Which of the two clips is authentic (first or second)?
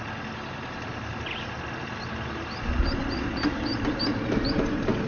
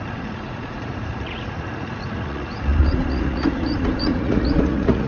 first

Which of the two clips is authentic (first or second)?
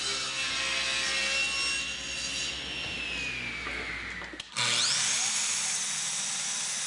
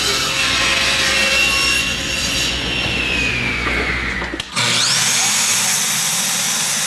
first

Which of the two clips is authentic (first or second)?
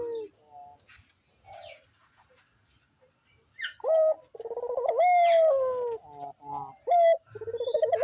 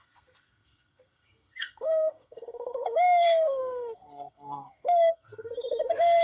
first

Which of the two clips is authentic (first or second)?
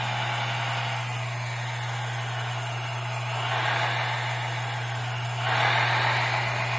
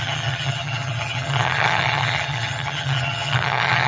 first